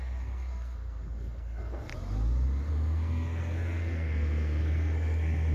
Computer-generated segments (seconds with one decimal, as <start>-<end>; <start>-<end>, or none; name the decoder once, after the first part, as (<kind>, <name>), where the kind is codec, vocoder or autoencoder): 0.0-1.9 (codec, SNAC); 2.7-5.5